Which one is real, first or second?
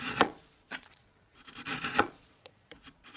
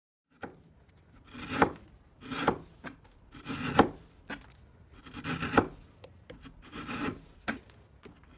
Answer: second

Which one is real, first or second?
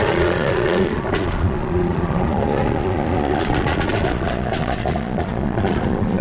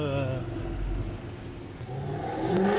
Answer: second